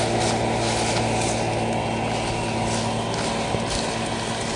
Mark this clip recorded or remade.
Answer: recorded